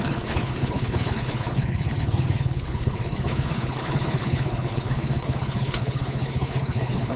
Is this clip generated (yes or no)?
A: yes